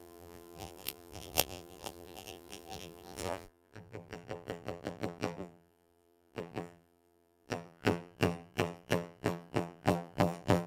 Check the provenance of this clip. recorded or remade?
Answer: remade